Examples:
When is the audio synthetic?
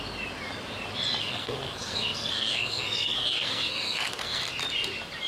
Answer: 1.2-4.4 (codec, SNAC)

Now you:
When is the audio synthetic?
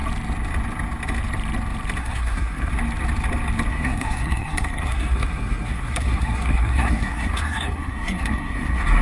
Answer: 2.0-2.7 (codec, SNAC); 3.7-9.0